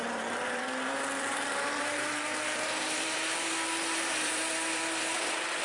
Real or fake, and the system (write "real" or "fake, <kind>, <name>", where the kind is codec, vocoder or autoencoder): fake, vocoder, BigVGAN v2